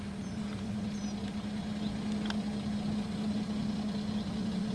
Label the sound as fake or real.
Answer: real